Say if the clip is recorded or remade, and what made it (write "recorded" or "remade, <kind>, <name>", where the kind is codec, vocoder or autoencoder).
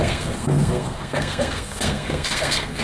remade, codec, SNAC